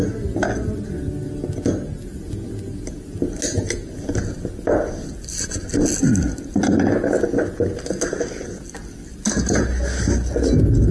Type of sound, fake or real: real